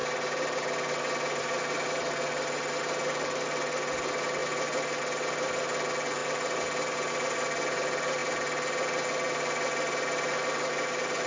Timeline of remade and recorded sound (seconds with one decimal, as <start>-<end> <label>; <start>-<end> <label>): 0.0-11.3 recorded